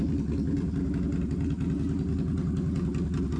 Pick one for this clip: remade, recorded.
recorded